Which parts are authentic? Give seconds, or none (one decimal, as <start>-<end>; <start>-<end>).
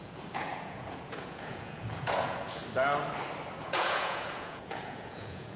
2.6-3.6